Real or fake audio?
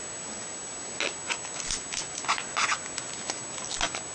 real